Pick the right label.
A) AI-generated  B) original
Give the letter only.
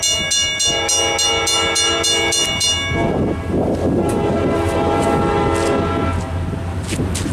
B